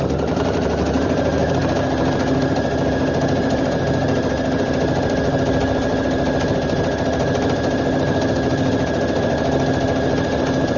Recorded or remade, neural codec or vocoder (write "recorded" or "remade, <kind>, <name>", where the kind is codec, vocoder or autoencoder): recorded